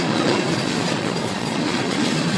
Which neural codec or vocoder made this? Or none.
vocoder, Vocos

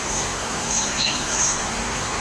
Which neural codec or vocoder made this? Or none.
codec, SNAC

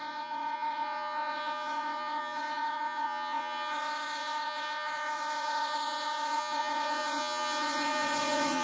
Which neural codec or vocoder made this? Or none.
vocoder, Vocos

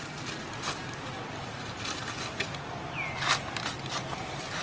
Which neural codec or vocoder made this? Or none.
none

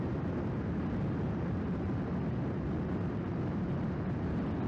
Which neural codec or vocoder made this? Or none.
none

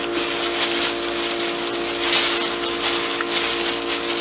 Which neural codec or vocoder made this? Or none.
none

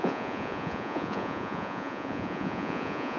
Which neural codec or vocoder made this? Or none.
vocoder, Vocos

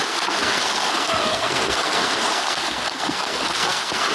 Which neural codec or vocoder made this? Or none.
codec, SNAC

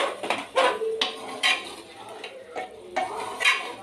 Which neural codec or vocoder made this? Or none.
none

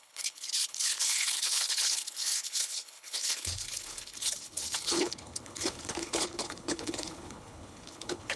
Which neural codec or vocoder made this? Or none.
codec, HILCodec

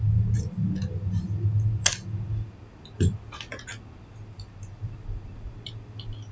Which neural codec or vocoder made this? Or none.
none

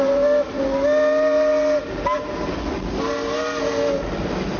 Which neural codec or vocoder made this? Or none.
none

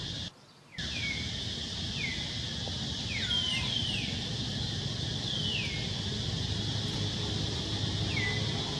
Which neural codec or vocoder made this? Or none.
none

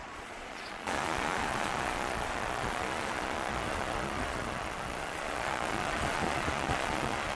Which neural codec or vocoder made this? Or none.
vocoder, Vocos